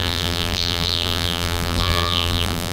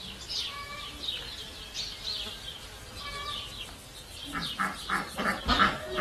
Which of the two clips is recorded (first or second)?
second